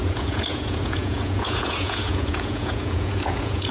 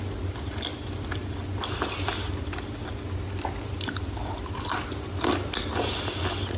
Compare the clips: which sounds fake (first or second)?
first